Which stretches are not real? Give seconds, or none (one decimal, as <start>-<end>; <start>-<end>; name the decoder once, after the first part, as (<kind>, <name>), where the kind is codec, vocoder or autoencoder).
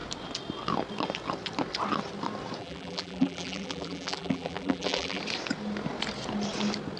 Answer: 2.6-5.2 (vocoder, BigVGAN v2)